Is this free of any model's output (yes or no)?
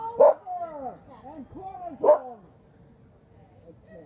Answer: yes